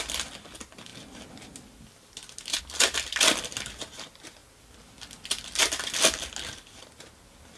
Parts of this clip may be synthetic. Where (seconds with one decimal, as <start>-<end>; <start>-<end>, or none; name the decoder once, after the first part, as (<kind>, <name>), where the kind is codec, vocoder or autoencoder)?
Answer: none